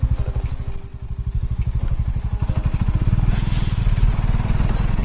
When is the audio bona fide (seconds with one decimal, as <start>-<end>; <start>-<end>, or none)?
0.0-5.0